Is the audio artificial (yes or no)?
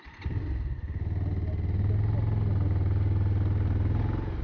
no